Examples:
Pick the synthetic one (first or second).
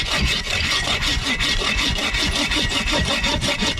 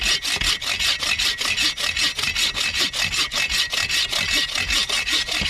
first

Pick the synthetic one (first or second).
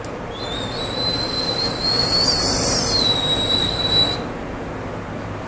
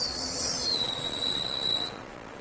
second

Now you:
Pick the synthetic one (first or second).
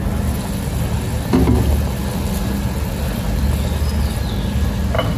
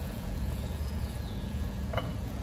second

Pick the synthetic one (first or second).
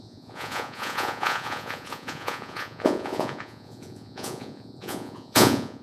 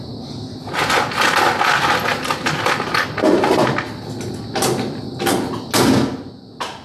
first